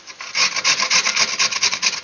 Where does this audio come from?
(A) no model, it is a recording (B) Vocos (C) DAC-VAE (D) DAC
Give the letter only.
A